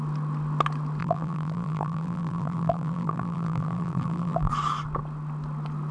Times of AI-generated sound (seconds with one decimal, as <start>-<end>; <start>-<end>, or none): 1.0-4.5